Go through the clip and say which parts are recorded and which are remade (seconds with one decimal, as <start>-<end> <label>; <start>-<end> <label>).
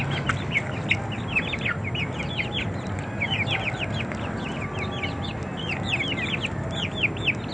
0.0-7.5 recorded